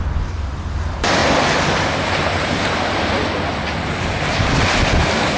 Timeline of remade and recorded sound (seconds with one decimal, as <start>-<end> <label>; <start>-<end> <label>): 0.0-1.2 recorded; 1.2-3.0 remade; 3.0-5.4 recorded